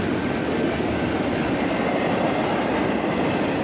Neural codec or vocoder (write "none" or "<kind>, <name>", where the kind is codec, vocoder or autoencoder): none